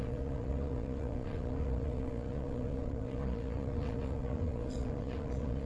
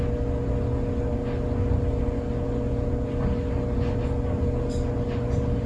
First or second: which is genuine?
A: second